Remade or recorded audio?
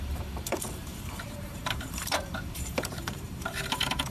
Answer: remade